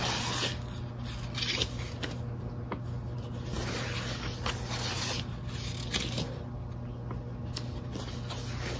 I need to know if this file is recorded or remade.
recorded